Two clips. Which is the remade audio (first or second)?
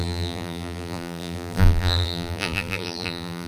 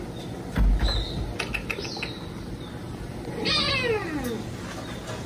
first